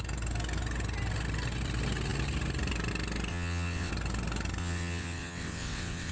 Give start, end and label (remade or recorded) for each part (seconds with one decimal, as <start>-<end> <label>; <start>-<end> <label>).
0.0-3.3 recorded; 3.3-3.9 remade; 3.9-4.6 recorded; 4.6-6.1 remade